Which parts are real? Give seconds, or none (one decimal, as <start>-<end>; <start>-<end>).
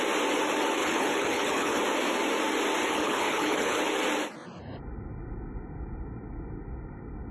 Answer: 0.0-0.8; 1.8-2.8; 3.8-7.3